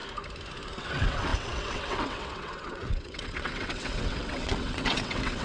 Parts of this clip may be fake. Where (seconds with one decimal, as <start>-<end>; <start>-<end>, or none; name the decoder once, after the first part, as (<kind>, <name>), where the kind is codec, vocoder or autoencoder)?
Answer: 0.8-5.4 (vocoder, WaveNeXt)